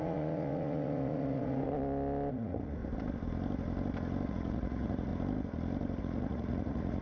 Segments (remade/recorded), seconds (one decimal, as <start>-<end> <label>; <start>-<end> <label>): 0.0-1.6 remade; 1.6-2.3 recorded; 2.3-2.8 remade; 2.8-4.3 recorded; 4.3-5.1 remade; 5.1-6.0 recorded; 6.0-7.0 remade